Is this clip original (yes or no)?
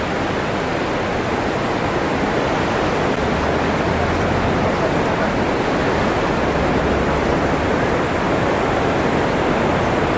yes